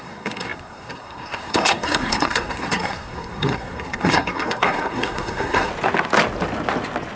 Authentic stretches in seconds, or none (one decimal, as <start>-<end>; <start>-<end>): 5.7-7.2